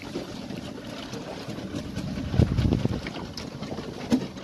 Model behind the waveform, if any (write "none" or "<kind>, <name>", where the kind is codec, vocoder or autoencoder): none